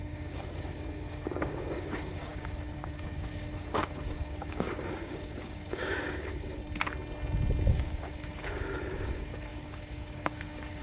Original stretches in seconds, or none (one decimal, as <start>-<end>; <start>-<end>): 6.6-7.7